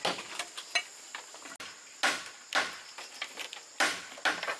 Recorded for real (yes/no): yes